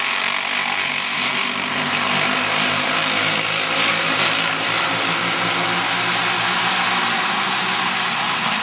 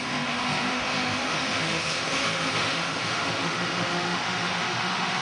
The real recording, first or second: first